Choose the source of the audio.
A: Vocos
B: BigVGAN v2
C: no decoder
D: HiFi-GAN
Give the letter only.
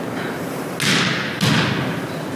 C